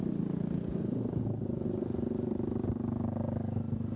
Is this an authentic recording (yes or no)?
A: yes